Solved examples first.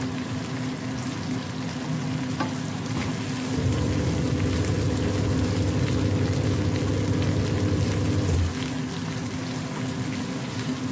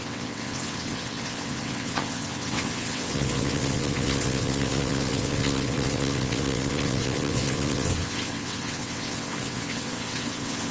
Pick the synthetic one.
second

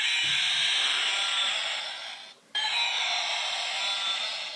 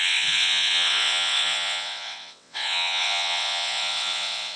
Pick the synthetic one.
second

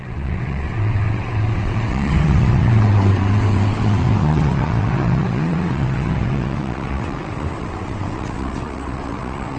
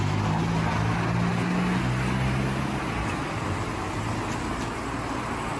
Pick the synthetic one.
first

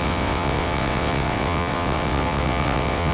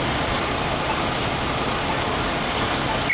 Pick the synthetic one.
first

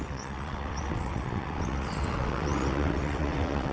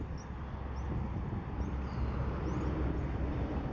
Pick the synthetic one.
first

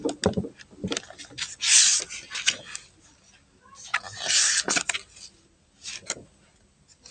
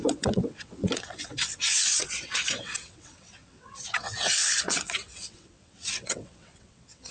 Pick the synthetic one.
second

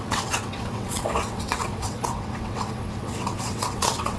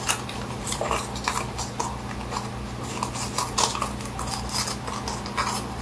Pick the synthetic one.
first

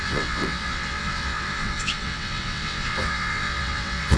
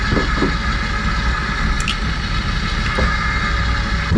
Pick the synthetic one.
first